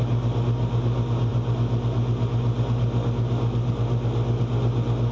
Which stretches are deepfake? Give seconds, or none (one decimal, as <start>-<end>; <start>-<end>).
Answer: none

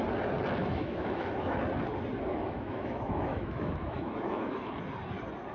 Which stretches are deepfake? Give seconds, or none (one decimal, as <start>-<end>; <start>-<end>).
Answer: 0.6-1.6; 2.3-4.7

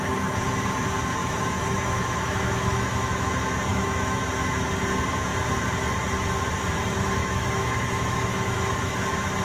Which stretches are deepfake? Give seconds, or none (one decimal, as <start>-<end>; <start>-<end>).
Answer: 1.2-3.3; 3.7-4.2; 7.2-9.0

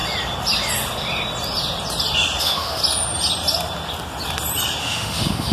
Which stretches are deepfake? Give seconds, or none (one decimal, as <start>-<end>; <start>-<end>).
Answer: 2.4-2.8; 4.8-5.5

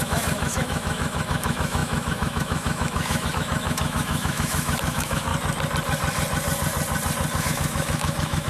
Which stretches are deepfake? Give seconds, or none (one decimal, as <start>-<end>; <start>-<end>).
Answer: 0.0-5.3; 7.4-8.5

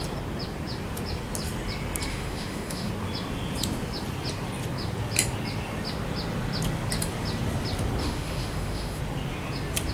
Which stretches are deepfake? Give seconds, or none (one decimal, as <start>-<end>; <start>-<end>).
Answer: 2.1-2.9; 8.0-9.0

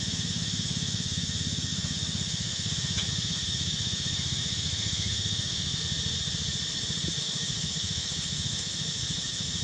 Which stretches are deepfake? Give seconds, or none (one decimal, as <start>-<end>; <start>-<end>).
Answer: 0.0-5.8; 7.2-9.6

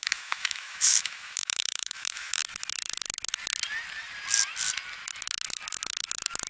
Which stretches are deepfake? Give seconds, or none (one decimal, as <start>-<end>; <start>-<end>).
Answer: 0.0-2.4